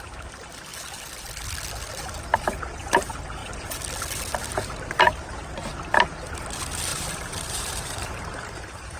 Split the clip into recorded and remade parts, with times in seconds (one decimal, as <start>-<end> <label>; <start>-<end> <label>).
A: 0.0-6.9 recorded; 6.9-9.0 remade